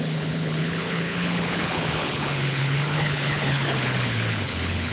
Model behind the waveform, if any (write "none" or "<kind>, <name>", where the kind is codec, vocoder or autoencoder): codec, HILCodec